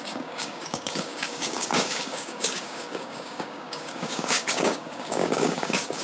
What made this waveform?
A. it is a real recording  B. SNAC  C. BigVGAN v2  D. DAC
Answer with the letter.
D